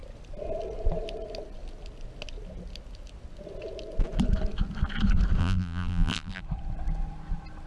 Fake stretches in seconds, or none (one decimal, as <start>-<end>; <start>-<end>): 5.4-6.4